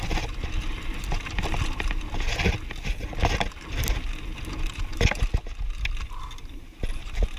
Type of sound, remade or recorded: recorded